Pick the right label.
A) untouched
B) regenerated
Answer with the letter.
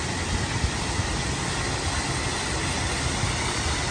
A